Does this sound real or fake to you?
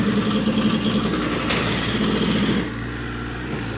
real